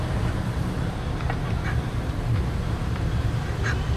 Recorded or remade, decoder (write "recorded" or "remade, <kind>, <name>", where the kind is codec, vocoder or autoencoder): remade, vocoder, BigVGAN v2